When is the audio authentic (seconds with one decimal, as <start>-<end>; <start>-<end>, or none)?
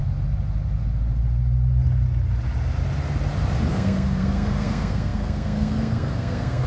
0.0-3.7